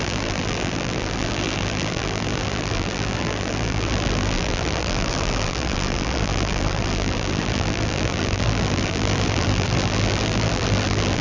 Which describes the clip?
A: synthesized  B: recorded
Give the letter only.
A